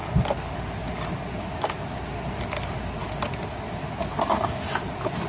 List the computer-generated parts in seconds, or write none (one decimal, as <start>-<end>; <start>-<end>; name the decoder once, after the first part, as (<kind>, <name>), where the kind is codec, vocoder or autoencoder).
none